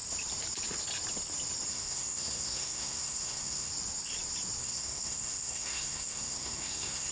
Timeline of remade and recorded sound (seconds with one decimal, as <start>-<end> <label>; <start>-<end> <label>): 0.0-1.7 recorded; 1.7-3.7 remade; 3.7-4.6 recorded; 4.6-7.1 remade